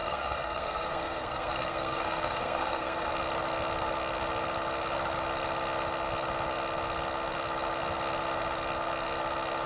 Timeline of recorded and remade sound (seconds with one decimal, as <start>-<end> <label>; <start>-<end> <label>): 0.0-3.1 remade; 3.1-9.7 recorded